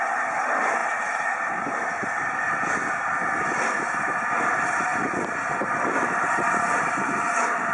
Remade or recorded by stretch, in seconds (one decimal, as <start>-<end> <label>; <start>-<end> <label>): 0.0-7.7 recorded